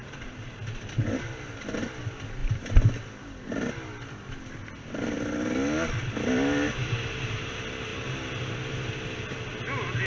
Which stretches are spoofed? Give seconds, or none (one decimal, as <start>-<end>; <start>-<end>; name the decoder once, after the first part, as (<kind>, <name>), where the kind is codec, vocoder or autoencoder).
none